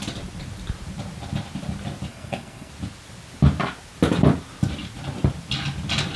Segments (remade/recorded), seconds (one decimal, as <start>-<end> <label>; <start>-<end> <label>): 0.0-2.1 recorded; 2.1-2.7 remade; 2.7-6.2 recorded